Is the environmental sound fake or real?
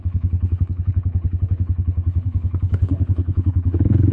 fake